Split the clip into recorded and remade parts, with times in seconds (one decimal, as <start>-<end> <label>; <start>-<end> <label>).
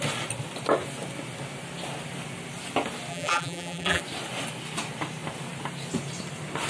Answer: 0.0-3.1 recorded; 3.1-4.0 remade; 4.0-6.7 recorded